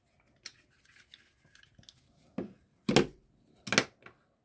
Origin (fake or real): real